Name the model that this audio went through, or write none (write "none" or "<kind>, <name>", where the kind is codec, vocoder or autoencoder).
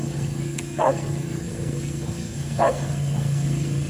codec, SNAC